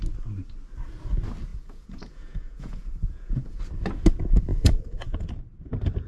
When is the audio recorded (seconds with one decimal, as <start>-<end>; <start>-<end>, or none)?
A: 0.0-1.5; 3.6-4.5; 5.3-6.1